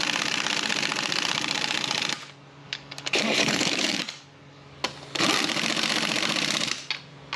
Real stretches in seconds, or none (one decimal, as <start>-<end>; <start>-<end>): 0.0-2.6; 4.8-7.4